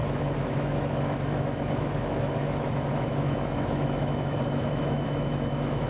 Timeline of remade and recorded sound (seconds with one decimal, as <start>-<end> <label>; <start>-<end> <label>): 0.0-5.9 remade